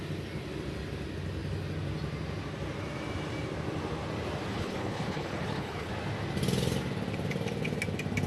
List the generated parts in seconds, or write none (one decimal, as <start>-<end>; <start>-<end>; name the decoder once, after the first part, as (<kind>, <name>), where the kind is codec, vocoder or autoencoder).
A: 4.5-5.9 (codec, HILCodec)